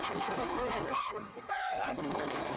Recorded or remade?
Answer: remade